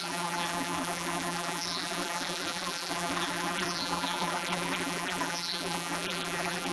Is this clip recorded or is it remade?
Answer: remade